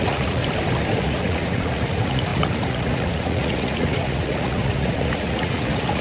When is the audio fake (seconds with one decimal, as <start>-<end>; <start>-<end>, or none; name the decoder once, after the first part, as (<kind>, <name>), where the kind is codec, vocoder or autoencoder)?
0.0-0.4 (vocoder, Vocos); 1.0-6.0